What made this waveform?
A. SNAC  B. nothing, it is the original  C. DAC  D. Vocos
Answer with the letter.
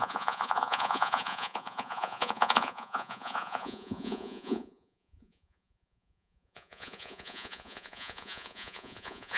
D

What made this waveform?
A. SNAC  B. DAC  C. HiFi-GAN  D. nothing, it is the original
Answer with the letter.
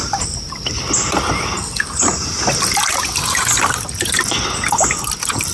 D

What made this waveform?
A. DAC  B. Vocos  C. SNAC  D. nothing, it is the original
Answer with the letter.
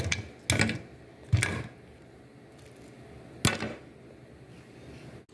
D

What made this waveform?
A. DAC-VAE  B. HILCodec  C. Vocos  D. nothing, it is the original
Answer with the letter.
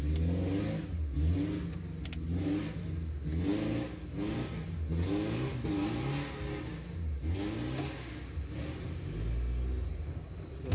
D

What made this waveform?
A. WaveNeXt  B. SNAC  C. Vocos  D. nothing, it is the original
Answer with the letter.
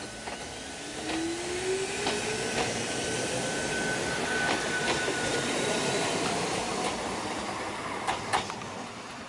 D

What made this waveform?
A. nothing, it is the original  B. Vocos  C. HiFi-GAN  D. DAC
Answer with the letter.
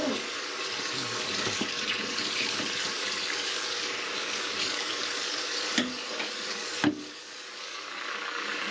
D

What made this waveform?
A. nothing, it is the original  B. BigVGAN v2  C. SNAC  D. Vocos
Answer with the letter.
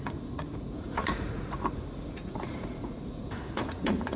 D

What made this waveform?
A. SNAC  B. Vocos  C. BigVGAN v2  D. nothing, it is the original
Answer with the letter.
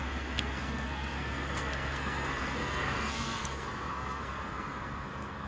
A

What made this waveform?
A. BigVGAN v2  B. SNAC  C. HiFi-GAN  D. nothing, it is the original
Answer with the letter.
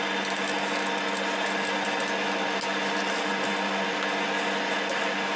D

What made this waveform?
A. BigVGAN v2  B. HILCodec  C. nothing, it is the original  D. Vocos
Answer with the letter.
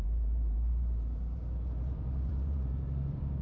A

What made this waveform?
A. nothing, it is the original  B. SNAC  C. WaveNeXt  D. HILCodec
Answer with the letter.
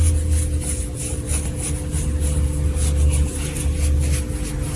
A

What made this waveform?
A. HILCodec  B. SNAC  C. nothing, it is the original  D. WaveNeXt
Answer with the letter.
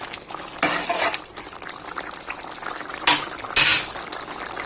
C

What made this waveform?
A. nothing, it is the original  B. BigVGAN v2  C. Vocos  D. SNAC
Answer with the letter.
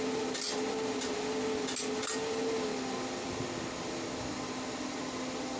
A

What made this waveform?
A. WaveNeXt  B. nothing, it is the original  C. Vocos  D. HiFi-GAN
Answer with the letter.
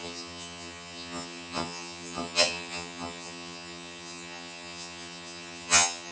D